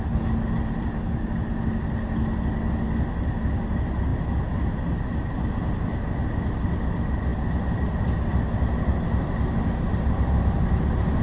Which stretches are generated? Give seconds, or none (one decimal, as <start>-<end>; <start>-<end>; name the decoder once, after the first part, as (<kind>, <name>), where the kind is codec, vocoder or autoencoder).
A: none